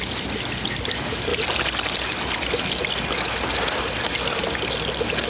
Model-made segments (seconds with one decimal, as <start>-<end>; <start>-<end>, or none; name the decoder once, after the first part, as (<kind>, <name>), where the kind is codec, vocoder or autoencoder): none